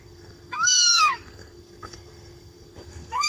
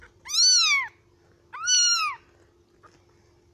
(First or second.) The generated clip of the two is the first